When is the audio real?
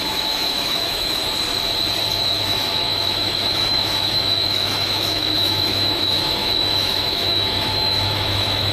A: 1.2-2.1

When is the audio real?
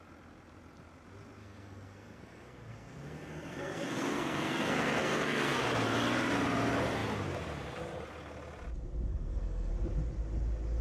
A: 0.0-1.4; 5.6-9.1; 9.7-10.8